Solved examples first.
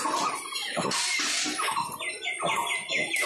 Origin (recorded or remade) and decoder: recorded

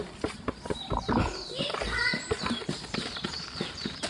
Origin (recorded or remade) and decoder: recorded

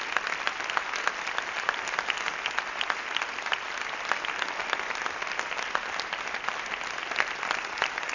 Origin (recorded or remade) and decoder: recorded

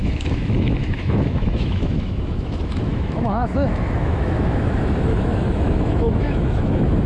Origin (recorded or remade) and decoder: remade, autoencoder, DAC-VAE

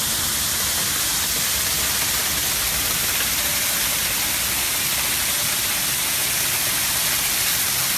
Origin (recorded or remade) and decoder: recorded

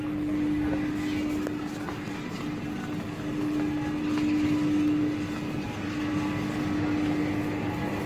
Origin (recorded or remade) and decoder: recorded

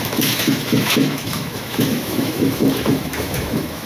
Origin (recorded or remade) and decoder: remade, autoencoder, DAC-VAE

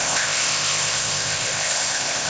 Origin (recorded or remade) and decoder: remade, codec, ZipCodec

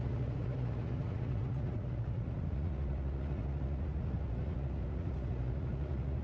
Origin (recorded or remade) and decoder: remade, vocoder, Vocos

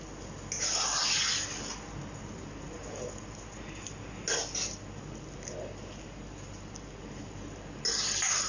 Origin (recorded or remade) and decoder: recorded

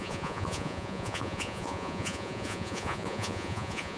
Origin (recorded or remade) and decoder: remade, vocoder, Vocos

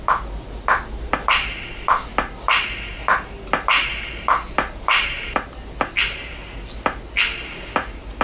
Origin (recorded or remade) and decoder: recorded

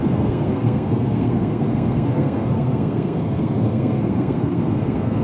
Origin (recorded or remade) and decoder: remade, codec, SNAC